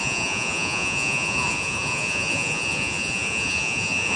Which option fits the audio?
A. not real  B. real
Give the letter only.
A